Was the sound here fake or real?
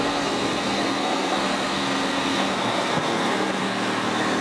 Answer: fake